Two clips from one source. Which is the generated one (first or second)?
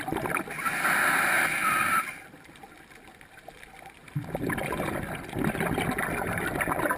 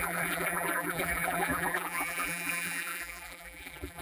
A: second